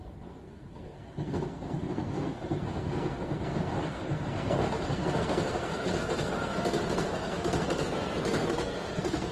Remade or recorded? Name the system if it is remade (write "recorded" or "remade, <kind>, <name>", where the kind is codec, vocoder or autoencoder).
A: remade, codec, SNAC